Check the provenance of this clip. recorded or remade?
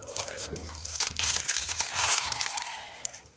remade